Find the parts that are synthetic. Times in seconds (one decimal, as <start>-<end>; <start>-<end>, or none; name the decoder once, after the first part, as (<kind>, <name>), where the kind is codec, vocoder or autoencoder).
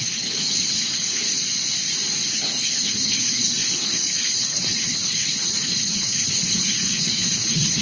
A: 0.0-1.4 (codec, HILCodec); 2.3-7.8